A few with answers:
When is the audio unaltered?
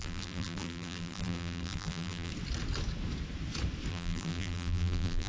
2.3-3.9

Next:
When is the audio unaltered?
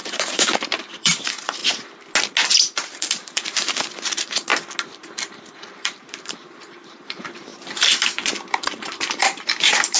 1.6-2.9; 4.5-5.7; 7.5-8.5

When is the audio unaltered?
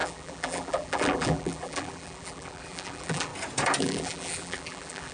3.3-3.8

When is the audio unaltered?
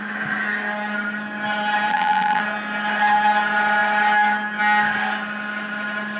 0.0-1.9; 2.4-6.2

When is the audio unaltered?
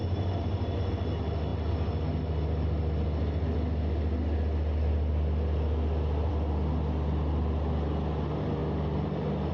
0.9-9.5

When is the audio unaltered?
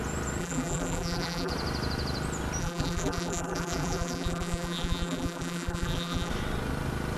0.0-0.4; 1.5-2.6; 6.3-7.2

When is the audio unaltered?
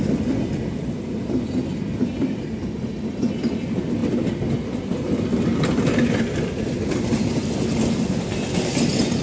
0.0-9.2